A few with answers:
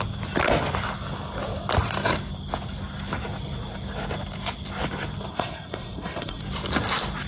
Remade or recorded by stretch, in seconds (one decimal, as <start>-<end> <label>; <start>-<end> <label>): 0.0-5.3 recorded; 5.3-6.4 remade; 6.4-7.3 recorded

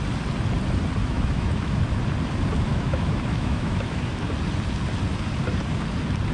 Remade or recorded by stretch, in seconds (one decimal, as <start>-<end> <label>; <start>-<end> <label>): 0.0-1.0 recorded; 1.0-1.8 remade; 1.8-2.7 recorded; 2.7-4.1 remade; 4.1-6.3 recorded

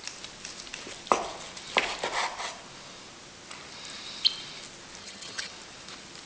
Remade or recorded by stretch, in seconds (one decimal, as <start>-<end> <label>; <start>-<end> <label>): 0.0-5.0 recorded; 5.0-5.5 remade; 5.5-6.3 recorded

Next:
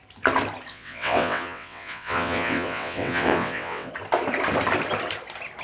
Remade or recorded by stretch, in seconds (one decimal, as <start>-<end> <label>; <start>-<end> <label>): 0.0-0.7 recorded; 0.7-3.9 remade; 3.9-5.6 recorded